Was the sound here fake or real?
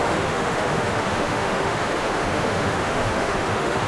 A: fake